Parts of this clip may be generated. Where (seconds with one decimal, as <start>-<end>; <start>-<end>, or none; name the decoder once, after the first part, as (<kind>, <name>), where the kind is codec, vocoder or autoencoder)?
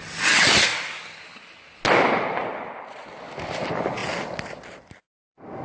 none